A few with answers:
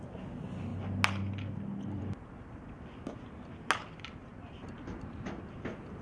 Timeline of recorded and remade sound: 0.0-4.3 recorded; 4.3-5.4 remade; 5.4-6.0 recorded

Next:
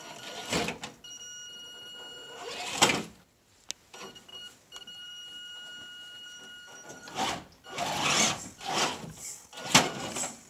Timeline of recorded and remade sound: 0.0-10.5 recorded

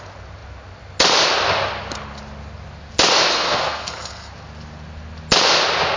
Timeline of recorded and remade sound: 0.0-3.3 recorded; 3.3-4.3 remade; 4.3-6.0 recorded